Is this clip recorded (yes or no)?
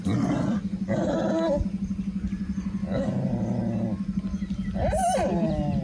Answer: yes